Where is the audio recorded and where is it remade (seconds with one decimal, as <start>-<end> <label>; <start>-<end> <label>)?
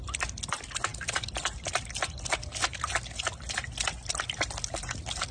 0.0-5.3 recorded